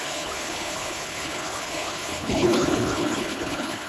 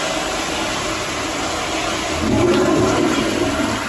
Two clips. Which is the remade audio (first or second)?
first